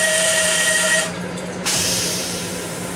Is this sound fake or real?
fake